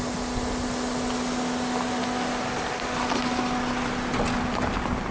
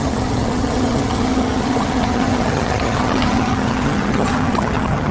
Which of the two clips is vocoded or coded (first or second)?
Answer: second